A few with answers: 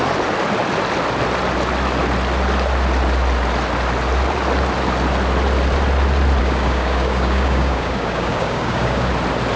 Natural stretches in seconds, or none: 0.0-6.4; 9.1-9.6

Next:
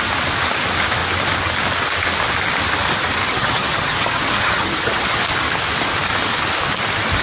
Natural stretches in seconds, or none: 0.0-3.3; 5.2-7.2

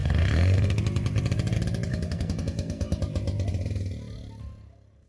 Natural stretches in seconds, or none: 0.8-1.9; 3.0-5.1

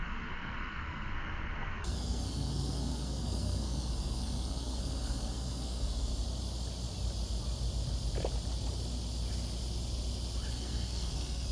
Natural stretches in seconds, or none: 6.1-10.5

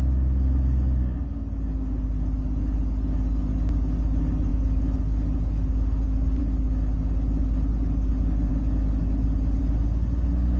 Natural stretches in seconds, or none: 0.0-10.6

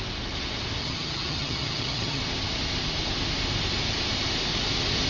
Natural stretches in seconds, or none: 0.0-0.8; 2.2-5.1